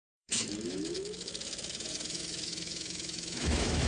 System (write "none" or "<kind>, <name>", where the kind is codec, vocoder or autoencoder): autoencoder, DAC-VAE